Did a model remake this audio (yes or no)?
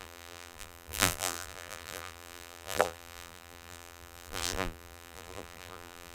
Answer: yes